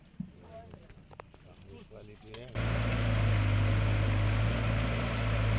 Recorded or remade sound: recorded